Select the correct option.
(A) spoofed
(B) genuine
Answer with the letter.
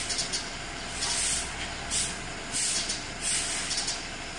B